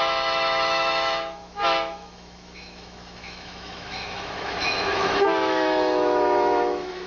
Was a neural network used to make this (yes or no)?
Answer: yes